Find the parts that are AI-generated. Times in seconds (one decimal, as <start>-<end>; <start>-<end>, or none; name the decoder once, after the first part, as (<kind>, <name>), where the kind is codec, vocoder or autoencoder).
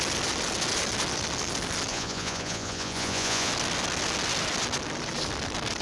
1.9-3.5 (vocoder, Vocos)